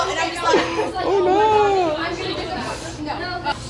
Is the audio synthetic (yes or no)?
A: no